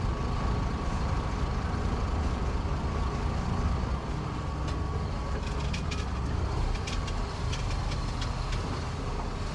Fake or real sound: real